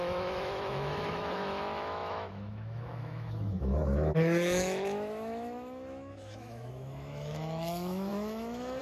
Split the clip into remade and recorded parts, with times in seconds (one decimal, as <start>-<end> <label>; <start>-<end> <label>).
0.0-8.8 remade